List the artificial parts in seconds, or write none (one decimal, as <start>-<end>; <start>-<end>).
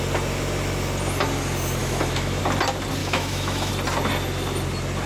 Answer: 1.8-2.4; 3.0-3.7